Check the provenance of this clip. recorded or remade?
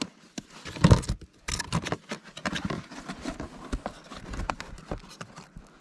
recorded